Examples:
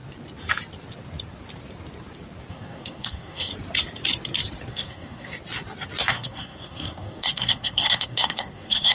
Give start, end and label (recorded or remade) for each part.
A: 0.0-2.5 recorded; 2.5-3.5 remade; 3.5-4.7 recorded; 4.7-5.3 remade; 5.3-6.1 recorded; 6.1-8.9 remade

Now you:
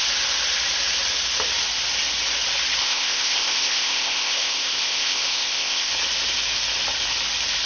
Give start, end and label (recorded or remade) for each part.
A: 0.0-2.8 recorded; 2.8-5.9 remade; 5.9-7.7 recorded

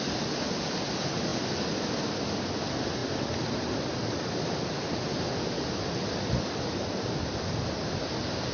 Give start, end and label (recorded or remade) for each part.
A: 0.0-8.5 recorded

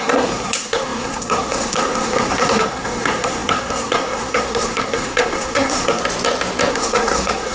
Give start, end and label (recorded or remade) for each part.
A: 0.0-6.0 remade; 6.0-6.7 recorded; 6.7-7.5 remade

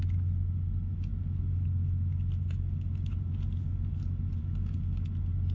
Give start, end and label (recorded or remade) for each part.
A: 0.0-5.5 recorded